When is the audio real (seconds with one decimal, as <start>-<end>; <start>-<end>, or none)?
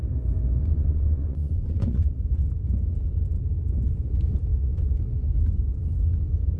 0.0-0.6; 2.3-6.6